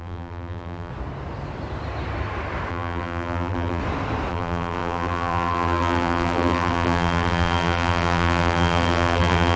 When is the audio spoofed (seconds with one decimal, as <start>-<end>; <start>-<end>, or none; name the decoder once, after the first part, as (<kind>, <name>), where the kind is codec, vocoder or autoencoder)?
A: 0.0-0.9 (vocoder, BigVGAN v2); 2.7-3.8; 4.3-9.6